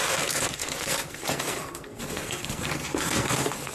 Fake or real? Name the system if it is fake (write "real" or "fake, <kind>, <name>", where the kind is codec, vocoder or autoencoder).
fake, codec, SNAC